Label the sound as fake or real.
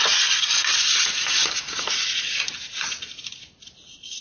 real